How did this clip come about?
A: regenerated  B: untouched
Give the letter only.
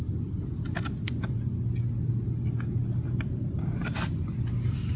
B